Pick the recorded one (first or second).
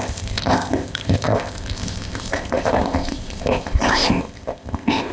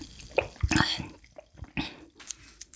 second